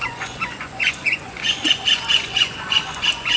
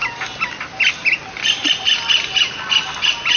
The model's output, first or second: first